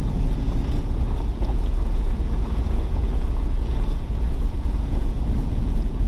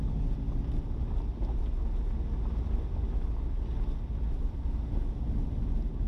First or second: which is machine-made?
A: first